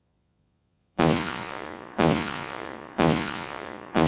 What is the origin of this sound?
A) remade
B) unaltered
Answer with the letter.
A